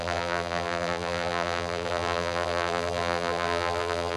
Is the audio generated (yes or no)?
yes